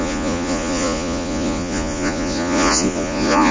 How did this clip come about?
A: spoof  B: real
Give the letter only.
A